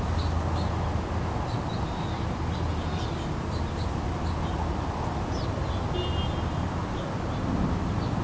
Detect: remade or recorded recorded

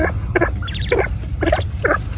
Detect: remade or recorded recorded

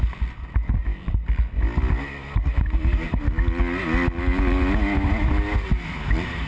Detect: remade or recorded recorded